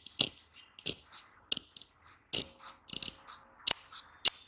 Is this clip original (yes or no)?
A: yes